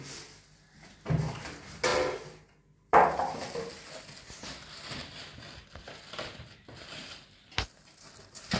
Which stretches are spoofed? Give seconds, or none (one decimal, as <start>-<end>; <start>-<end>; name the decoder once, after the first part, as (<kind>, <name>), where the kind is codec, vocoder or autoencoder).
none